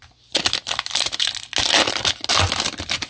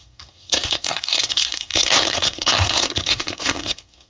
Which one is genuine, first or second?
first